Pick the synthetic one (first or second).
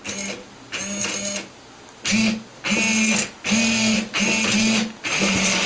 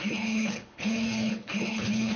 second